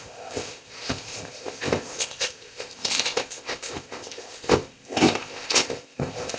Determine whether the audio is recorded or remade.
remade